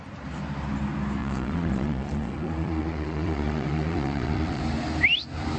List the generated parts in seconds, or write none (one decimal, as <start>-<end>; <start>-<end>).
1.2-4.6